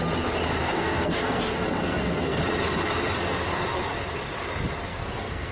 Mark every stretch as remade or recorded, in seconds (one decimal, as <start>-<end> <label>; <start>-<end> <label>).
0.0-0.6 recorded; 0.6-1.4 remade; 1.4-1.8 recorded; 1.8-2.4 remade; 2.4-4.9 recorded; 4.9-5.5 remade